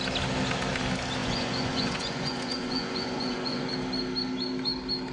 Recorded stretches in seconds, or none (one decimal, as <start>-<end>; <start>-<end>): 0.0-1.2; 3.7-5.1